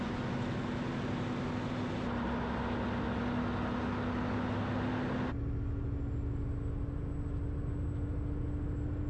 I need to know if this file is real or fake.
real